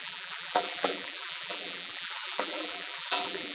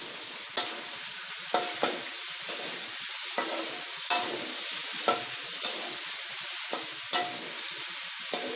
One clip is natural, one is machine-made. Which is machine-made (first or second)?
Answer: first